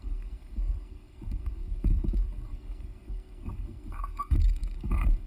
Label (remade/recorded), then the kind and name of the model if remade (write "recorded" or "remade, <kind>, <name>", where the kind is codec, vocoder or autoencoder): remade, codec, SNAC